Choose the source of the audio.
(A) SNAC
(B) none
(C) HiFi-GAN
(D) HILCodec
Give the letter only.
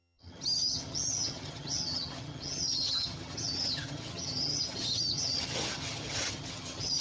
C